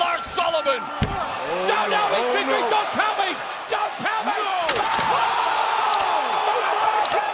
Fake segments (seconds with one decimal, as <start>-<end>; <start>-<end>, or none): none